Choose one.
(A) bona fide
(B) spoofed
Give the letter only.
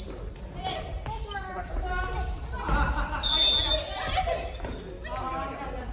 A